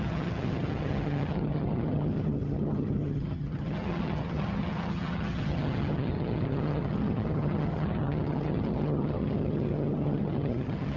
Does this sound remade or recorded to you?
remade